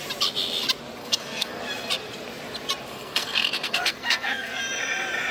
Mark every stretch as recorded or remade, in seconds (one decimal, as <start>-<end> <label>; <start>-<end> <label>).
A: 0.0-1.0 recorded; 1.0-1.6 remade; 1.6-2.9 recorded; 2.9-4.6 remade; 4.6-5.3 recorded